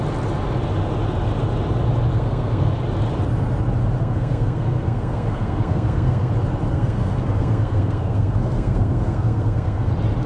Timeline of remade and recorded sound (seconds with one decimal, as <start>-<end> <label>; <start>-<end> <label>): 0.0-2.1 recorded; 2.1-2.7 remade; 2.7-4.0 recorded; 4.0-6.3 remade; 6.3-6.7 recorded; 6.7-9.9 remade; 9.9-10.3 recorded